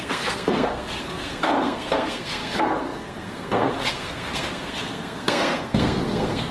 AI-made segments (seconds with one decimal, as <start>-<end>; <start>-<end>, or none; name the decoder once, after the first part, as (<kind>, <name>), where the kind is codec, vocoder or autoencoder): 0.0-6.5 (codec, SNAC)